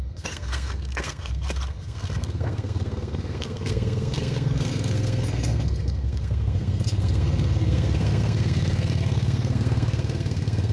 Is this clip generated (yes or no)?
yes